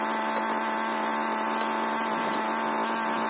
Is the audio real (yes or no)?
yes